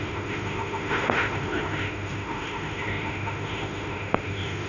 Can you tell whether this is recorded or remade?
remade